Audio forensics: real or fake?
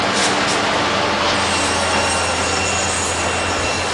real